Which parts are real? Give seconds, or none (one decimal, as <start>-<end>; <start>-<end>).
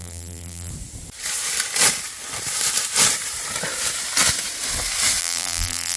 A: 0.7-5.2